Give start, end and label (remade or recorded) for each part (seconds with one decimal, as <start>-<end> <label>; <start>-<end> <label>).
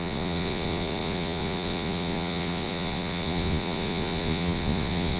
0.0-5.2 remade